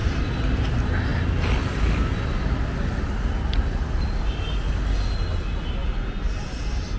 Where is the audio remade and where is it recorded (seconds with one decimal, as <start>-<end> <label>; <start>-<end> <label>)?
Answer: 0.0-7.0 recorded